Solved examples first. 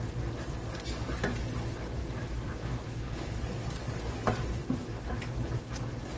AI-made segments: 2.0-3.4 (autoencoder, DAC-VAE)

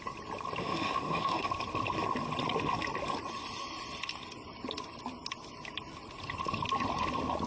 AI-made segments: 0.6-1.5 (autoencoder, DAC-VAE)

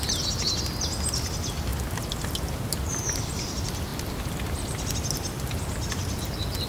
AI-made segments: none

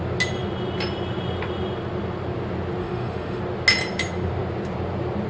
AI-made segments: 2.8-3.4 (autoencoder, DAC-VAE)

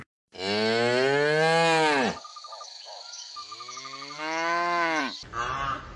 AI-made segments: 2.3-5.0 (autoencoder, DAC-VAE)

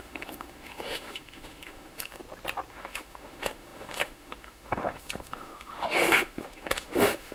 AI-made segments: 0.0-2.2 (autoencoder, DAC-VAE); 2.7-7.3